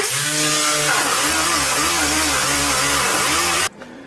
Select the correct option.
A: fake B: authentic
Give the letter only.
B